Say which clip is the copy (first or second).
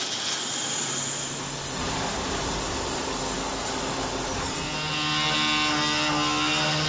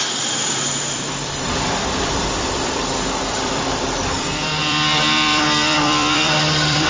second